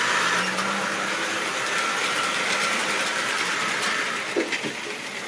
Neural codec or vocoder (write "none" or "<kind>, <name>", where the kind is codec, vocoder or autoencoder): none